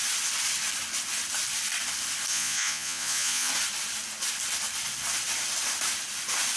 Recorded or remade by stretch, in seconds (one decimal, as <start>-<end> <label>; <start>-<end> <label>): 0.0-2.3 recorded; 2.3-3.5 remade; 3.5-6.6 recorded